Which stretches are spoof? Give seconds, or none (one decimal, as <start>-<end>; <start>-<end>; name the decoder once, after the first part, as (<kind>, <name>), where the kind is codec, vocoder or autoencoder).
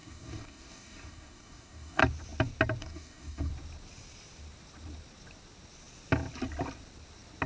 0.0-2.0 (codec, DAC); 2.8-3.5